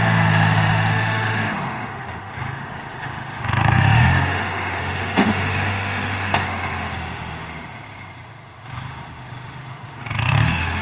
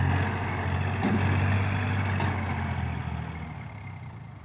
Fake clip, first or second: first